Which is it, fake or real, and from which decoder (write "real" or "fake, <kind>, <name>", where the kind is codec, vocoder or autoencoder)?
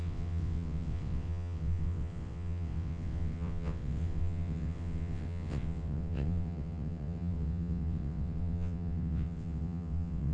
fake, vocoder, WaveNeXt